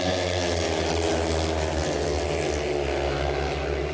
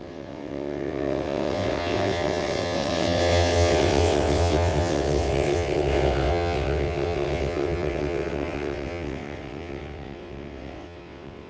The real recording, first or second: first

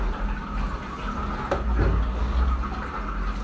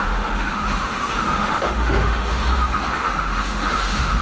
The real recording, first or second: first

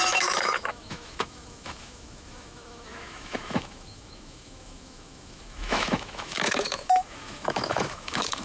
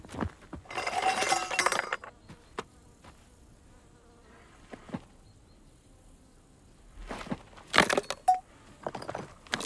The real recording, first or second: second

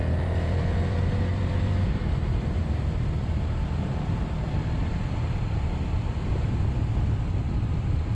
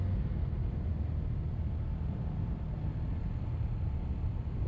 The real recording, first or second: second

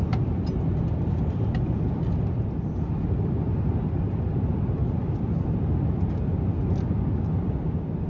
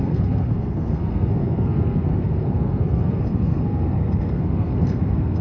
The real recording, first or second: first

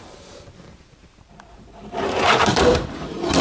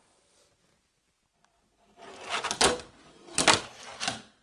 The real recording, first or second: second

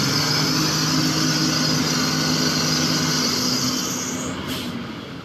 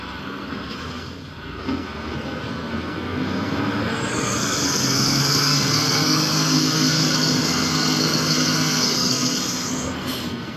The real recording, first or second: first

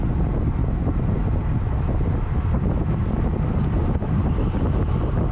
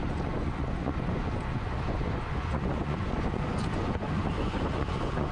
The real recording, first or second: first